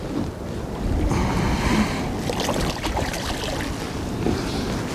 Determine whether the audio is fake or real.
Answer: real